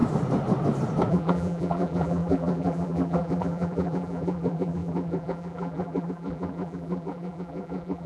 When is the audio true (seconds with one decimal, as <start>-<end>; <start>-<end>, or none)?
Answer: 0.0-1.1

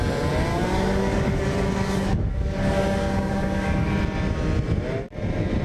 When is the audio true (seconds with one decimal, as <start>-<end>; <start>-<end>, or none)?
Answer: 0.0-0.5; 3.9-5.6